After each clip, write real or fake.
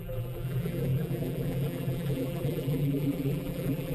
fake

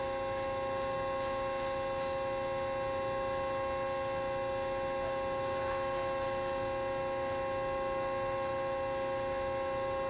real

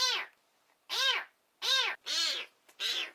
fake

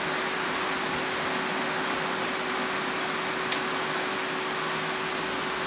real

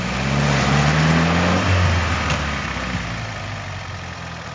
real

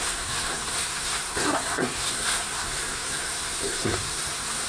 fake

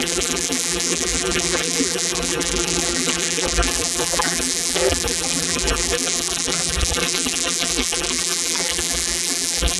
fake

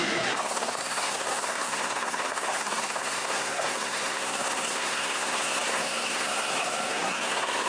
fake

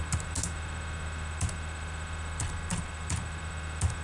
real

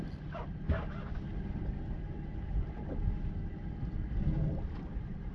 real